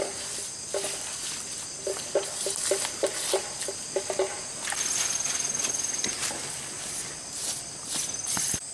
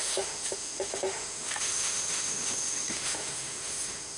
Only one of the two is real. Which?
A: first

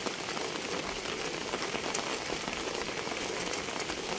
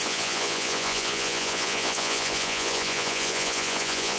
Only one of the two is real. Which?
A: first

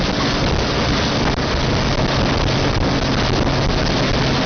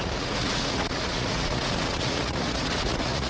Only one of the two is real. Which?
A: first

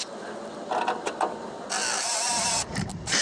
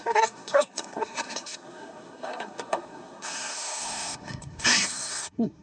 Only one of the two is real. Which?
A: first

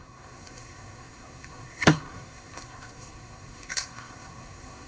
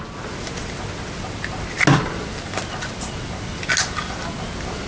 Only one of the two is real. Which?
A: second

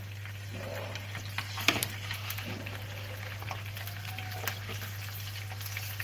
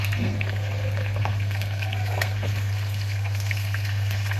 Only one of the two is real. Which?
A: first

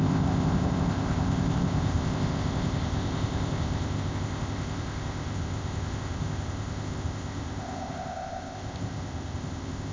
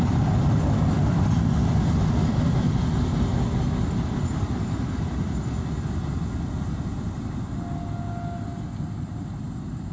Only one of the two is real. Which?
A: second